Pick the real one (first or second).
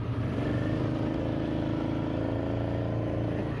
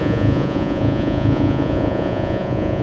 first